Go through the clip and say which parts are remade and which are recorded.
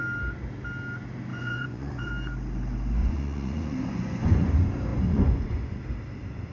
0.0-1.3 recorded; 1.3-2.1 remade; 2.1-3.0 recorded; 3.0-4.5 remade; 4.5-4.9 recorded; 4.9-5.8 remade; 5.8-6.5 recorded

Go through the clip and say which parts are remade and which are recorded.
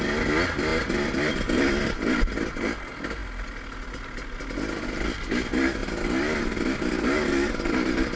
0.0-8.2 recorded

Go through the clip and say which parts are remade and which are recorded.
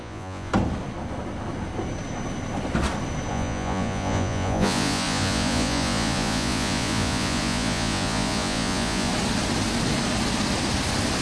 0.0-0.5 remade; 0.5-3.3 recorded; 3.3-9.1 remade; 9.1-11.2 recorded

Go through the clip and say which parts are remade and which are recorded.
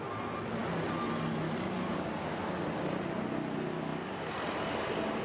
0.0-5.2 recorded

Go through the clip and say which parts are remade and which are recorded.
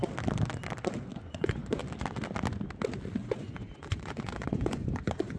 0.0-1.1 recorded; 1.1-1.8 remade; 1.8-3.2 recorded; 3.2-5.4 remade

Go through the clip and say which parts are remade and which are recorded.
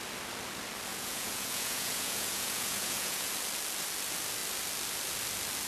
0.0-0.9 recorded; 0.9-3.3 remade; 3.3-5.7 recorded